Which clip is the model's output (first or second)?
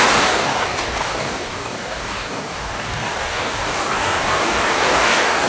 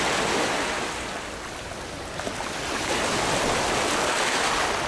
first